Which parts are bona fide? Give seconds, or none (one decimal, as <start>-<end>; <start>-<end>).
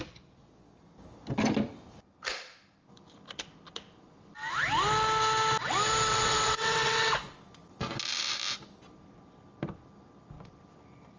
0.0-6.1; 7.1-11.2